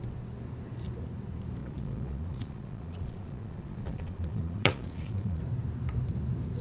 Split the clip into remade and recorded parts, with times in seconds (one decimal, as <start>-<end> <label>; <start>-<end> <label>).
0.0-1.6 recorded; 1.6-5.4 remade; 5.4-6.6 recorded